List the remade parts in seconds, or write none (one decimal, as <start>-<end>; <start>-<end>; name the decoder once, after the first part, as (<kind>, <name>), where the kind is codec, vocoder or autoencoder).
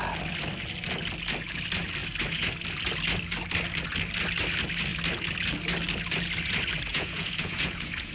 6.9-8.1 (vocoder, Vocos)